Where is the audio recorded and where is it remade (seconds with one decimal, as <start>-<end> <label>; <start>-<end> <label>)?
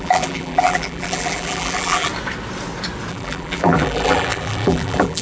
0.0-2.1 remade; 2.1-3.1 recorded; 3.1-5.2 remade